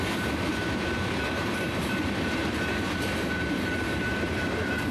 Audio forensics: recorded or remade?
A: remade